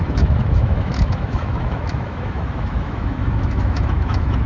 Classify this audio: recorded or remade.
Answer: remade